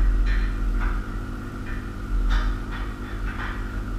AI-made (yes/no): no